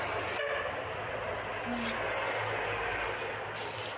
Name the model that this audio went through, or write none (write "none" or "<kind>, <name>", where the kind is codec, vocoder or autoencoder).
none